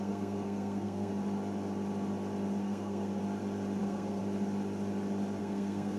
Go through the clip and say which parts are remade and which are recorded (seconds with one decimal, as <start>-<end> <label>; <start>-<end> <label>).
0.0-1.1 remade; 1.1-2.6 recorded; 2.6-3.2 remade; 3.2-3.8 recorded; 3.8-4.2 remade; 4.2-5.4 recorded; 5.4-6.0 remade

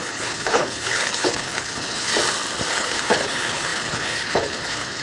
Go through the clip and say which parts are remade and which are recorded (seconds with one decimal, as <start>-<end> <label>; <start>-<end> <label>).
0.0-2.1 remade; 2.1-2.7 recorded; 2.7-5.0 remade

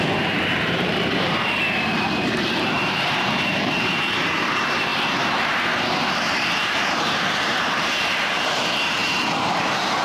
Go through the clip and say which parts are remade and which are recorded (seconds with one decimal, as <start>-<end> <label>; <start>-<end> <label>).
0.0-4.9 remade; 4.9-6.1 recorded; 6.1-10.0 remade

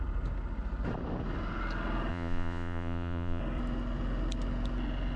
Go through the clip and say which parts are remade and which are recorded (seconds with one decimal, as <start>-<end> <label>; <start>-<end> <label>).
0.0-2.1 recorded; 2.1-3.4 remade; 3.4-5.2 recorded